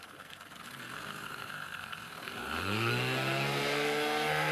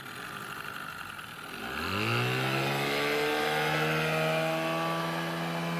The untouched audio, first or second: second